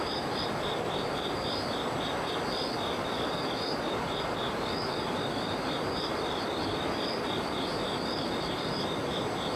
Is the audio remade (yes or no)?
yes